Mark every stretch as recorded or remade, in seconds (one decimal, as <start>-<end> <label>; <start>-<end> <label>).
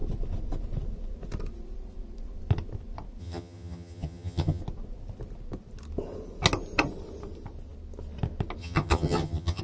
0.0-3.2 recorded; 3.2-4.6 remade; 4.6-8.6 recorded; 8.6-9.6 remade